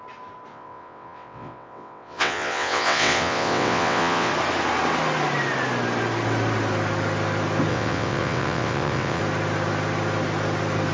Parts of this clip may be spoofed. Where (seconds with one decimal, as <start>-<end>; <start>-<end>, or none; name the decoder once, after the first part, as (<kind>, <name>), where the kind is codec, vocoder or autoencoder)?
0.5-4.3 (vocoder, WaveNeXt); 7.7-9.2

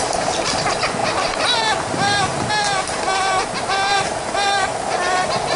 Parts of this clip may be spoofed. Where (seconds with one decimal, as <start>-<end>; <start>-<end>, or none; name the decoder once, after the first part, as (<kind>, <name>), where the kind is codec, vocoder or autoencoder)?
1.0-2.5 (vocoder, BigVGAN v2); 3.9-5.6

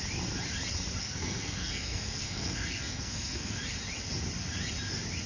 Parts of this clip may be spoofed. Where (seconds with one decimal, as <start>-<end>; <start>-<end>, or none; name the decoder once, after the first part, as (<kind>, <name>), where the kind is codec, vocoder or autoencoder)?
1.0-3.5 (codec, SNAC)

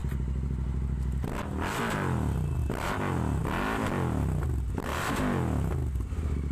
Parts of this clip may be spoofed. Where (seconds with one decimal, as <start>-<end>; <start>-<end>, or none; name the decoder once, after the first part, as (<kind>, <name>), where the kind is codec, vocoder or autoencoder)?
none